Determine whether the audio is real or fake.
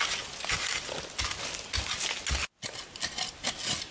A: real